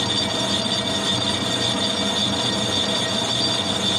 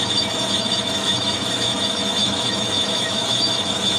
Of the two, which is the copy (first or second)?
second